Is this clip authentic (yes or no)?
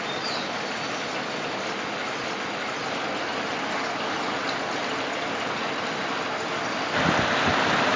yes